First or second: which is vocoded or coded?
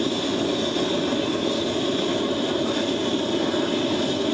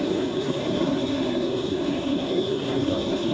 second